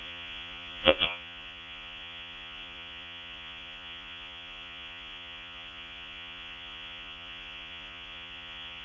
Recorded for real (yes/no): no